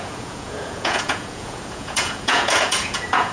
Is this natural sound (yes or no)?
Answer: no